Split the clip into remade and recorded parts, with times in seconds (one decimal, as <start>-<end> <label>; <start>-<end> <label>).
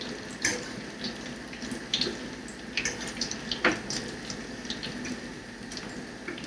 0.0-6.5 recorded